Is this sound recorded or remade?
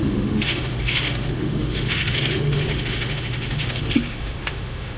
remade